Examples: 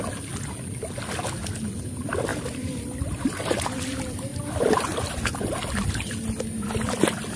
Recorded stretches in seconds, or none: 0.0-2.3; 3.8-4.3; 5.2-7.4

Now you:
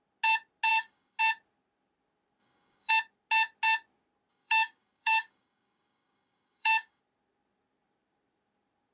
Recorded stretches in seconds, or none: 0.0-0.7; 1.2-2.4; 2.9-4.3; 7.0-8.9

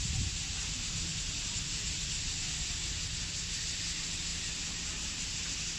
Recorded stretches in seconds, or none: 1.1-3.3; 4.3-5.8

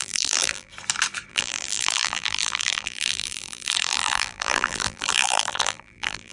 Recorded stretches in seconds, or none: 0.7-1.3

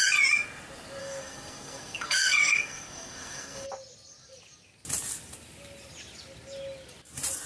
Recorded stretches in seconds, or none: 0.0-1.0; 3.7-7.5